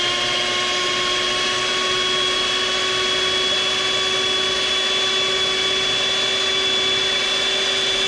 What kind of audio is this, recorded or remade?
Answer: recorded